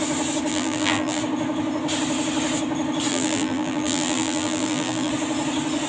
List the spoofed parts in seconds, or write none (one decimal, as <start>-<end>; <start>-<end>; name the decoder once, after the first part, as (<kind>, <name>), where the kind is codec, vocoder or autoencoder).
0.5-1.2 (vocoder, BigVGAN v2); 3.1-5.1

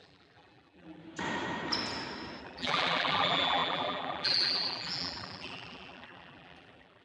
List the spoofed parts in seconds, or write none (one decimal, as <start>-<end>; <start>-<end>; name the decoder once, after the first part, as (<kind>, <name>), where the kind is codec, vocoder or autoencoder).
0.0-1.0 (vocoder, BigVGAN v2); 2.4-7.0